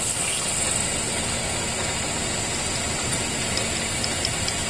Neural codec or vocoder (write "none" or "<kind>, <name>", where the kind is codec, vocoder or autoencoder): none